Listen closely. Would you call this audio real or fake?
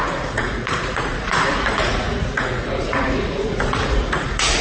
fake